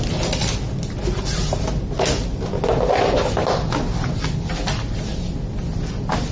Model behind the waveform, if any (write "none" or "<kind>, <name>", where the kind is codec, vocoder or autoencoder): none